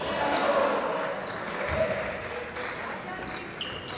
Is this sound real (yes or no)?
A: yes